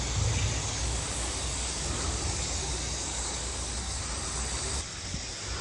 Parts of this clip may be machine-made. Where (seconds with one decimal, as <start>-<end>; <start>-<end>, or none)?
0.6-4.0